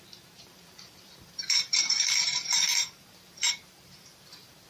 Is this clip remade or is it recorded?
remade